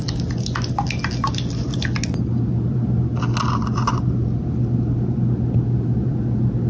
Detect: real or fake real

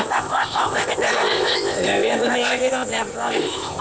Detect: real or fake fake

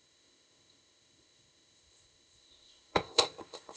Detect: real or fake fake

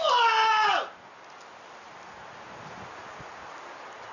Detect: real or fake real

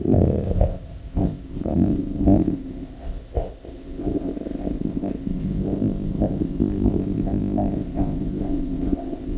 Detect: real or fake fake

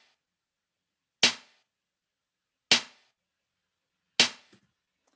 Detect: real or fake real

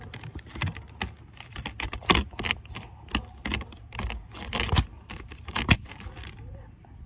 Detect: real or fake real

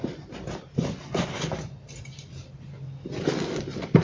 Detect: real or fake real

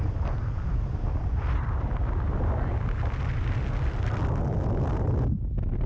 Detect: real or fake real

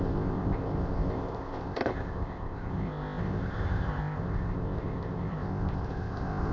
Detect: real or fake fake